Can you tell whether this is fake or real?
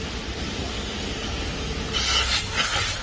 real